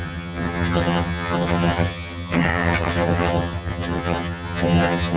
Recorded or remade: remade